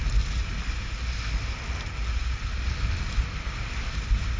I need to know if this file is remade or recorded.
recorded